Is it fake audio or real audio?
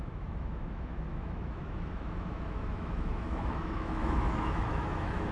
fake